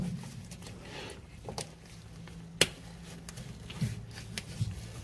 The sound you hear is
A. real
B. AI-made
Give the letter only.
A